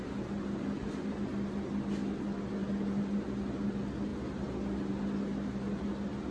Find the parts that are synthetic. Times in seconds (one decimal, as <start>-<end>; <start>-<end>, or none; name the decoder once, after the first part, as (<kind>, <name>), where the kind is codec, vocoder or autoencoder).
none